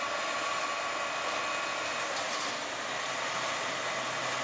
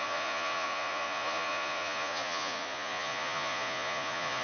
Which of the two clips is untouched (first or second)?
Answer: first